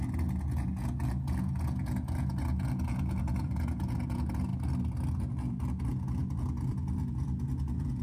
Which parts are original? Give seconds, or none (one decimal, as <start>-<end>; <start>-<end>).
4.5-5.1

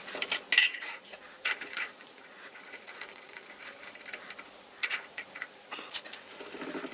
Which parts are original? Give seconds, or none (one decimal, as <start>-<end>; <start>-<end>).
0.0-0.6; 3.5-4.8; 6.4-6.9

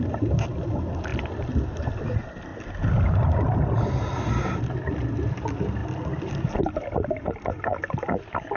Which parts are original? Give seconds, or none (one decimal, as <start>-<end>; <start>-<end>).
0.0-8.6

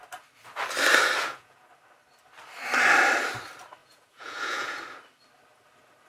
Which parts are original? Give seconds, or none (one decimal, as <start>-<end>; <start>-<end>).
0.0-1.2; 1.7-3.8; 4.8-6.1

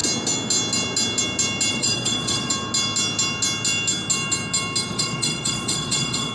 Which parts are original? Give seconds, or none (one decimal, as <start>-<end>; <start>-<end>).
0.0-1.7; 2.5-4.9